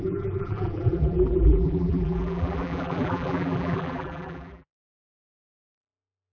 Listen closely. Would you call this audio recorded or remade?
remade